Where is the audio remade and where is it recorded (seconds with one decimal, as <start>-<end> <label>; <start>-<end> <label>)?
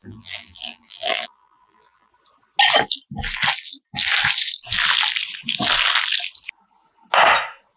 0.0-2.1 remade; 2.1-7.8 recorded